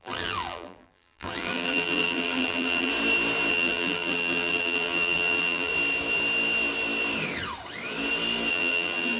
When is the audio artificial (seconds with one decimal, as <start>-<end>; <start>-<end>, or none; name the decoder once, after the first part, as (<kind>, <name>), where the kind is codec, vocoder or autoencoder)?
0.0-2.9 (vocoder, BigVGAN v2); 3.5-5.7; 8.5-9.2

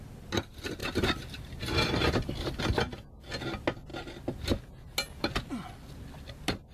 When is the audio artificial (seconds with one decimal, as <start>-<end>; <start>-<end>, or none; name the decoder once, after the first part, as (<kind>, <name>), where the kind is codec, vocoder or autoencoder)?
0.8-2.6 (vocoder, BigVGAN v2)

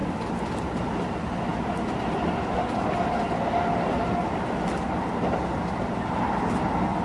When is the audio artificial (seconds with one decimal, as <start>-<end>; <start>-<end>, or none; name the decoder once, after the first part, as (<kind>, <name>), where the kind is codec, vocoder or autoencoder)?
none

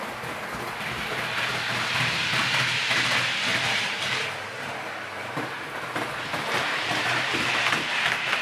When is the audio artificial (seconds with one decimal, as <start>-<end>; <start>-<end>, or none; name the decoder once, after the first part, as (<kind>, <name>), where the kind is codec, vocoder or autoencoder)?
2.2-2.8 (vocoder, BigVGAN v2); 3.5-8.4

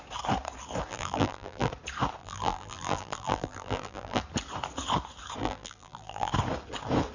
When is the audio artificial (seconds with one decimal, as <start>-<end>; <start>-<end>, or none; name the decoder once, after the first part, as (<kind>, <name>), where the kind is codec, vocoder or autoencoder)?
0.9-1.7 (vocoder, BigVGAN v2); 2.2-4.2; 5.4-6.3

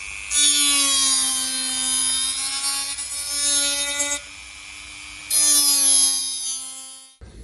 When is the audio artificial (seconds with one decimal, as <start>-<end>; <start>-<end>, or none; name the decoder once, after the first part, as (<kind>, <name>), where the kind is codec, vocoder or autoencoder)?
none

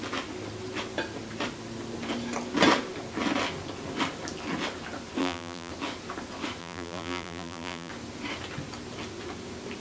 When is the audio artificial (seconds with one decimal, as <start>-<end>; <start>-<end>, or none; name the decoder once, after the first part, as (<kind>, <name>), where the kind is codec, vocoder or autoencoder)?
5.2-5.7 (vocoder, BigVGAN v2); 6.6-7.9

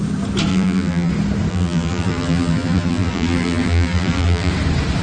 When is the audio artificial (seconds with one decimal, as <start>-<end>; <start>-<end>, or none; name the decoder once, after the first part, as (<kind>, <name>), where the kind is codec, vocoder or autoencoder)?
0.5-1.1 (vocoder, BigVGAN v2); 1.5-4.5